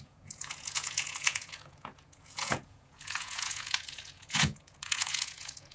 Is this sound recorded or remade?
remade